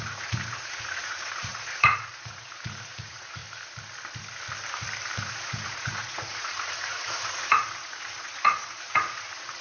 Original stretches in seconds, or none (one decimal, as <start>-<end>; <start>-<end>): 3.4-5.2